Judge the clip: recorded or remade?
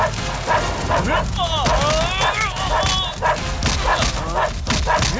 recorded